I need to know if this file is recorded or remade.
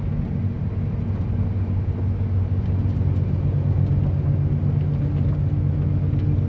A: recorded